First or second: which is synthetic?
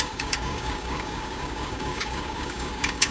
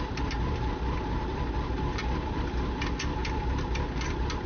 first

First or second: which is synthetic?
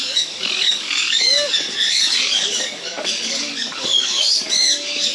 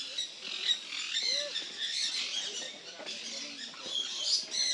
first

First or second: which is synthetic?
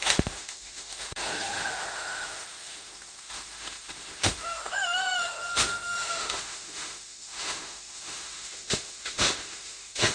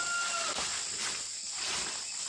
first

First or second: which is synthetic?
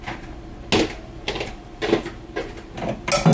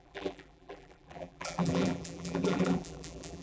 second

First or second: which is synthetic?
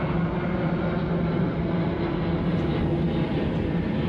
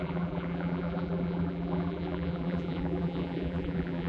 second